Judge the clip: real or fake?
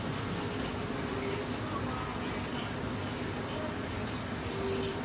real